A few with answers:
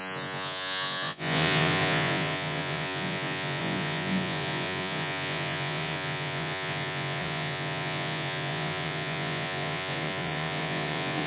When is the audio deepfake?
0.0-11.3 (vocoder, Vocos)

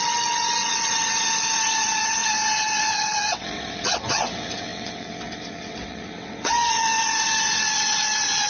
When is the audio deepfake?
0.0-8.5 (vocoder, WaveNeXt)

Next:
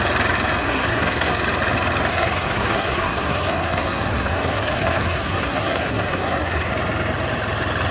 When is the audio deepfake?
0.6-1.3 (codec, SNAC); 2.1-6.7